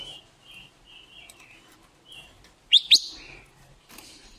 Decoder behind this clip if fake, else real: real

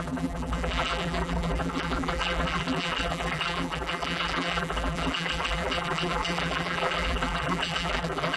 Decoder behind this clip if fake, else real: fake, vocoder, BigVGAN v2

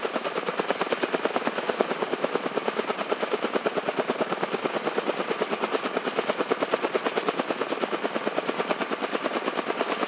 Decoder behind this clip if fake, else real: real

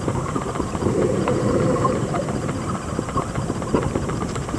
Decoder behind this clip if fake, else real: fake, vocoder, BigVGAN v2